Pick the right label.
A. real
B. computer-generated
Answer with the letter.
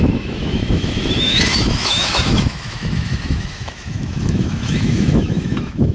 B